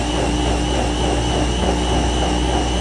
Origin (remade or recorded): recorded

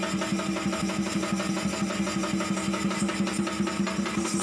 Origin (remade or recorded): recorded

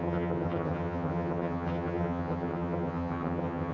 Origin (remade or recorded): remade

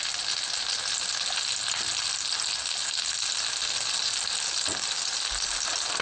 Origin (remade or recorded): recorded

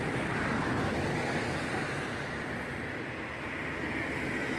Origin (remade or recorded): recorded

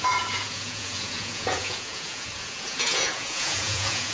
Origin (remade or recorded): remade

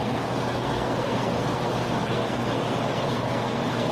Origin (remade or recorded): remade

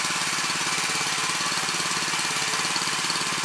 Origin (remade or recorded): recorded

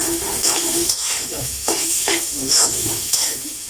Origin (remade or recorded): remade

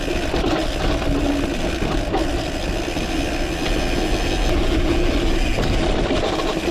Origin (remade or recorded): recorded